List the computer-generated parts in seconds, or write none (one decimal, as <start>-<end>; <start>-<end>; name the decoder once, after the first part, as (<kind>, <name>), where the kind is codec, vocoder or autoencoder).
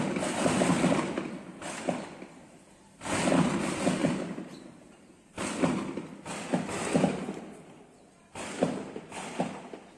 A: 2.4-3.1 (vocoder, BigVGAN v2); 4.0-5.4